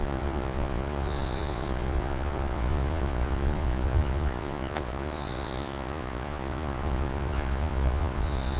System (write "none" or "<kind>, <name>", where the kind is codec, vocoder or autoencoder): vocoder, Vocos